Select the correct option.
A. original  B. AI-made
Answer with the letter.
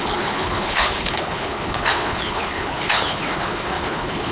B